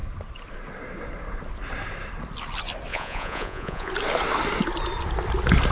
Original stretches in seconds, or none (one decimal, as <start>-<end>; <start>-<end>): 0.0-2.9; 3.9-5.7

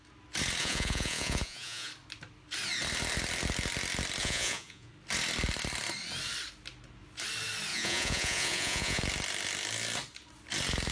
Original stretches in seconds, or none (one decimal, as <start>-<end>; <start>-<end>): 0.0-0.6; 1.9-4.2; 4.9-7.7; 9.0-10.9

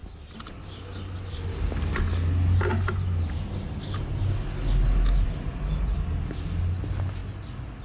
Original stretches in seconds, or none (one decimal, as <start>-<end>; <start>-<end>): 0.0-7.8

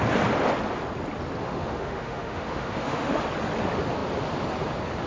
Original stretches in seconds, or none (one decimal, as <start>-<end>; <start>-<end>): 0.0-1.4; 3.2-5.1

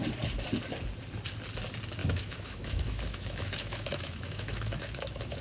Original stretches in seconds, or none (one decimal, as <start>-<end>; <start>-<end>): 0.0-2.0